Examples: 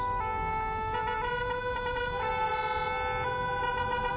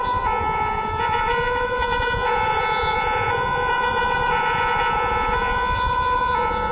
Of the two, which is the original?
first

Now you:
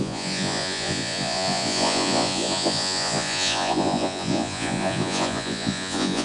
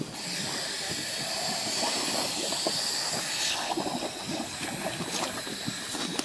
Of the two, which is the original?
second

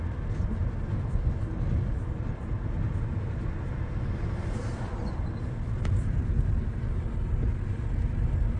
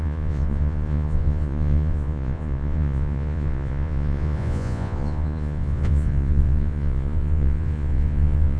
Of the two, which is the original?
first